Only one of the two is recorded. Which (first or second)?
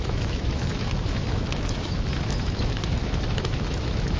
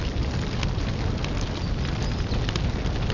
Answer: second